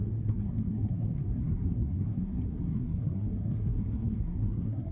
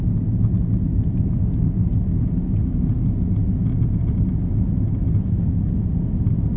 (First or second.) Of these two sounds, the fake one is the first